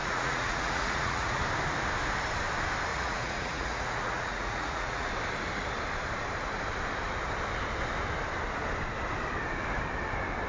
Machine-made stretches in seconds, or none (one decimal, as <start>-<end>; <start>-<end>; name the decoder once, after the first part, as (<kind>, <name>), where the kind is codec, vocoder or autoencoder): 0.0-1.4 (vocoder, Vocos); 2.9-5.1